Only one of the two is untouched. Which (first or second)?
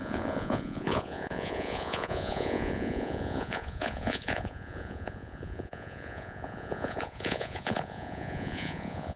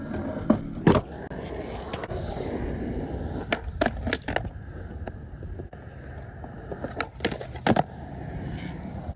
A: second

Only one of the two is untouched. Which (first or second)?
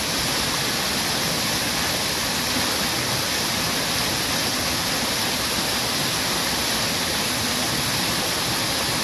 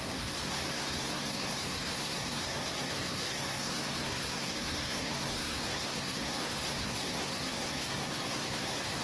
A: first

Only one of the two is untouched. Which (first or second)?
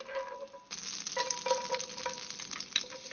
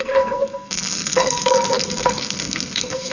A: first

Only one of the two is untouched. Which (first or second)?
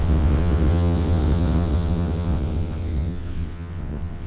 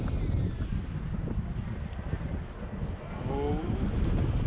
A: second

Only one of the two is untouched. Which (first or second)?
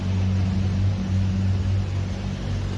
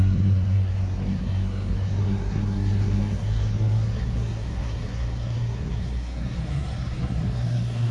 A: first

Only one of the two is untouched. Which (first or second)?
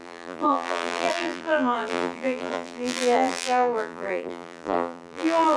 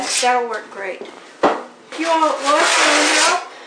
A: second